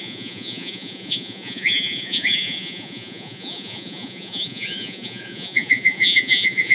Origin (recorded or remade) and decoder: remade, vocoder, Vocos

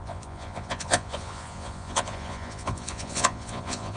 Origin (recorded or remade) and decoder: remade, vocoder, Vocos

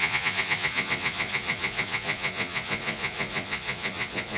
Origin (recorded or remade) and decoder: remade, vocoder, Vocos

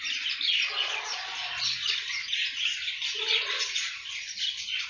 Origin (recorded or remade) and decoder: recorded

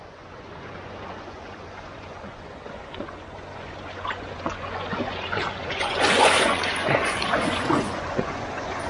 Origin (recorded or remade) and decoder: remade, vocoder, Vocos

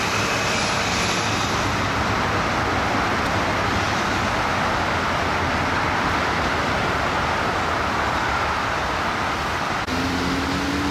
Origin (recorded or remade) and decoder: recorded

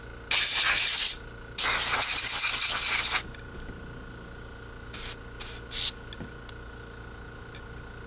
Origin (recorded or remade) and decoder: recorded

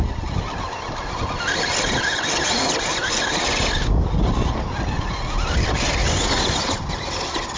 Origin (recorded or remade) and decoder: recorded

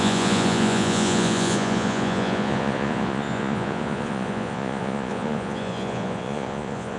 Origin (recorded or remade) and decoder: remade, vocoder, Vocos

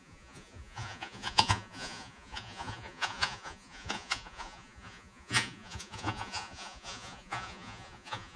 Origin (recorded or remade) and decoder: remade, vocoder, Vocos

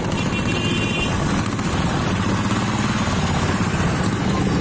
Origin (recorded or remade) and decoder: recorded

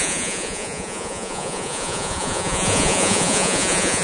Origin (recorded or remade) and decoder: remade, vocoder, Vocos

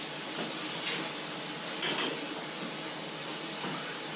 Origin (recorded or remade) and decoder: recorded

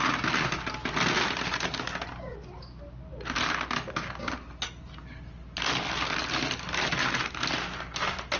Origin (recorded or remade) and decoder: recorded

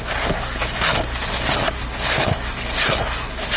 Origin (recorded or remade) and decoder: recorded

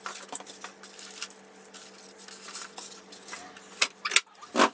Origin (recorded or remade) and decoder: recorded